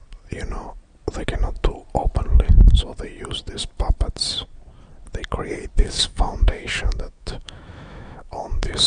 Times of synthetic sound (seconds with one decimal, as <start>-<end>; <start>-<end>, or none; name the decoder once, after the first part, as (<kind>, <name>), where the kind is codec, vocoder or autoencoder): 2.5-2.9 (autoencoder, DAC-VAE); 5.8-8.9